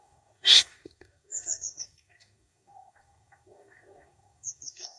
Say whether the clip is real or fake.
fake